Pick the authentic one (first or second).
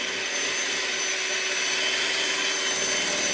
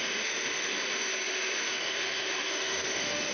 first